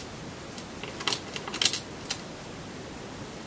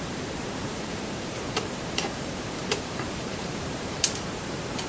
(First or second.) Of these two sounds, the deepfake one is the second